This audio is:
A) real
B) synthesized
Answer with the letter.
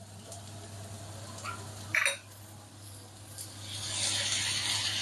A